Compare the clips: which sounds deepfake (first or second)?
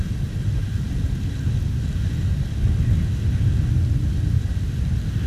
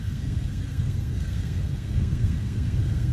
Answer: second